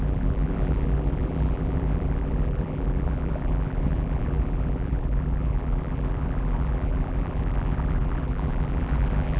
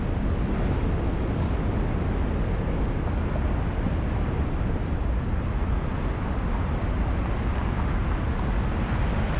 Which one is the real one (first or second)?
second